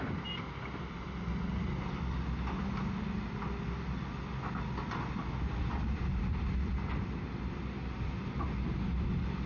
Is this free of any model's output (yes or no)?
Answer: yes